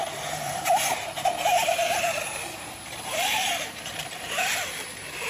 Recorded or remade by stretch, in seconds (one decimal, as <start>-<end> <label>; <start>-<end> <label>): 0.0-1.7 remade; 1.7-5.3 recorded